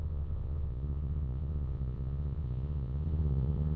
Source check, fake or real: fake